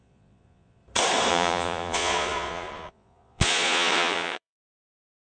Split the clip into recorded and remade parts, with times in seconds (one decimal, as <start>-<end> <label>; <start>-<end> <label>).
0.0-0.8 remade; 0.8-1.3 recorded; 1.3-5.2 remade